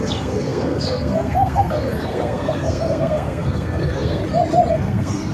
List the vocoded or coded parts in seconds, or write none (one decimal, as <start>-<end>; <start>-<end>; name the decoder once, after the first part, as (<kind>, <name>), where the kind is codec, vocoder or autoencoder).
0.0-4.2 (codec, SNAC); 4.7-5.3